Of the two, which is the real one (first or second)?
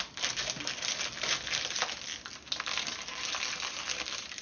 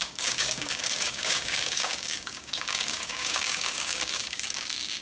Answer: first